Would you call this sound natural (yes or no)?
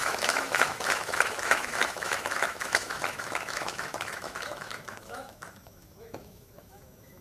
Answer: no